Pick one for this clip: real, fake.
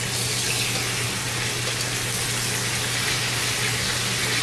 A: real